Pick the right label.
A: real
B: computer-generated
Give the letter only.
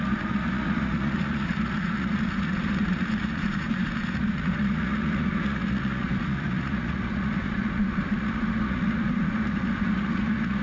B